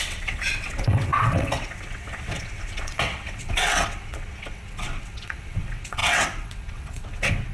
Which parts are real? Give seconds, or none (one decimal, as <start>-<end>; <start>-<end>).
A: none